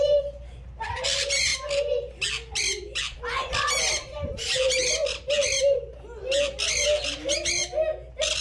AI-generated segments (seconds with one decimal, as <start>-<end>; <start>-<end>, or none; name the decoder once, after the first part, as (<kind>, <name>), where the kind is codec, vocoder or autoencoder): none